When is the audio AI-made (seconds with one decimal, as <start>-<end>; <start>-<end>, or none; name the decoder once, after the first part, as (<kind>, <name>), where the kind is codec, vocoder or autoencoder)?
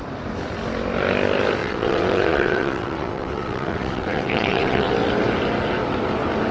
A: 1.6-4.9 (vocoder, WaveNeXt)